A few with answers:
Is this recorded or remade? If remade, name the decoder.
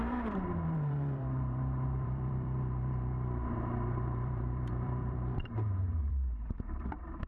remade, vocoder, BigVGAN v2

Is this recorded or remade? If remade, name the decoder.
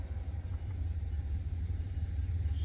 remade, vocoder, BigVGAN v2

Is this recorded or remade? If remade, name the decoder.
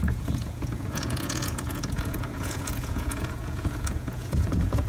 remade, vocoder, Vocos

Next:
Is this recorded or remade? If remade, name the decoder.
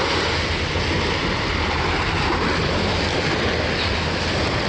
recorded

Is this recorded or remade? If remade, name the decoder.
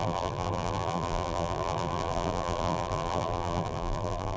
remade, vocoder, BigVGAN v2